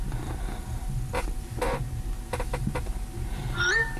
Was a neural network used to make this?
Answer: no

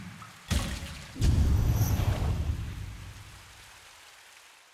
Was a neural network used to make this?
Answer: yes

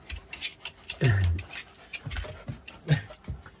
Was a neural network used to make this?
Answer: no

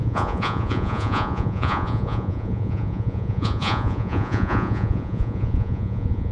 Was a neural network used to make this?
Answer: yes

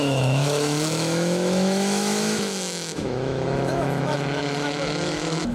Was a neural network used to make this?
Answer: yes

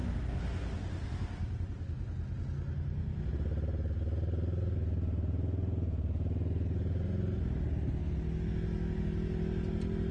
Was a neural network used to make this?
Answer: no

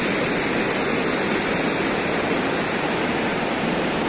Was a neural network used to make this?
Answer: no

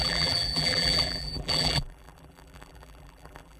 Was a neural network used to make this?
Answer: yes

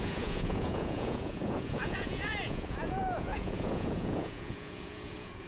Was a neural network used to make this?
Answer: yes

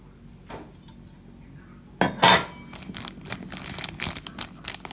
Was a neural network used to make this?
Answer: no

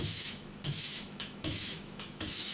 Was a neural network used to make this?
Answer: yes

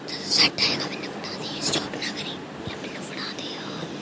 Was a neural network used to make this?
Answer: no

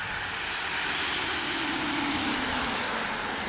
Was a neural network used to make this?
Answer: no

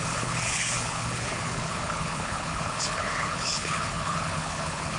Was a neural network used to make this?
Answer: yes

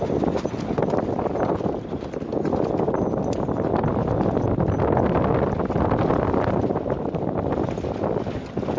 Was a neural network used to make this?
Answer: no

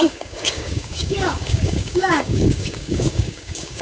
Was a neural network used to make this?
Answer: yes